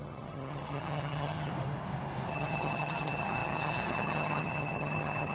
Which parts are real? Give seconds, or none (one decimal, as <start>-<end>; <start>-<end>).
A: 1.5-2.3